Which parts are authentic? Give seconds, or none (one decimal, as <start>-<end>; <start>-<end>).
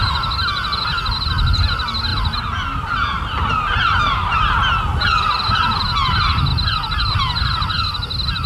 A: 0.0-8.5